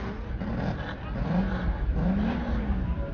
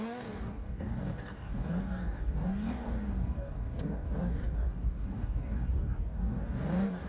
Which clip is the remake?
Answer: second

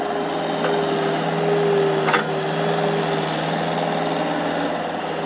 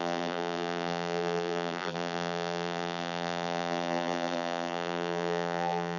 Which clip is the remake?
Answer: second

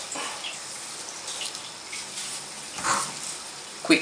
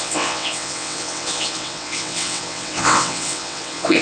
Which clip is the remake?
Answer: second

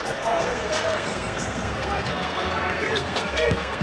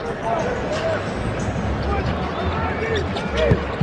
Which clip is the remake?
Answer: first